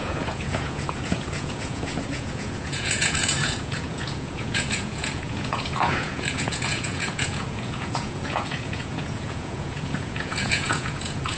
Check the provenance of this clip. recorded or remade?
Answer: remade